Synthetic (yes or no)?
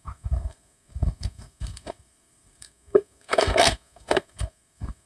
yes